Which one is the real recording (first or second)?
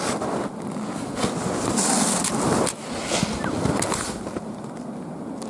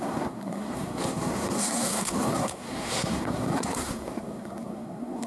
first